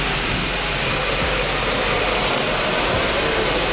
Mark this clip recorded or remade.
recorded